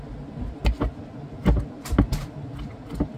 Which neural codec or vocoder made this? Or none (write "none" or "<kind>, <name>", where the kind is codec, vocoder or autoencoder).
none